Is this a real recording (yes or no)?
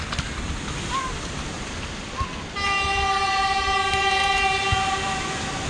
yes